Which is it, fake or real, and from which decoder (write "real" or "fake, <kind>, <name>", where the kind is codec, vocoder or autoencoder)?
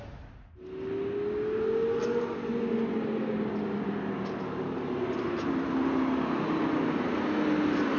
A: real